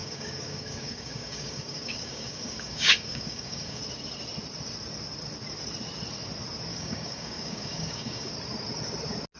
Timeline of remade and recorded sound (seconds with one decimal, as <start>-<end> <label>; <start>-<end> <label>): 0.0-3.8 remade; 3.8-6.7 recorded; 6.7-8.3 remade; 8.3-9.4 recorded